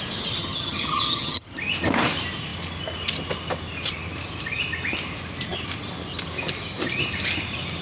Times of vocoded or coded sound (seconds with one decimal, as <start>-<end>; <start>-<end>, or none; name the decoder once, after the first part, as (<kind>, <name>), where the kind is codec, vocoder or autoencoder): 0.4-1.6 (vocoder, HiFi-GAN)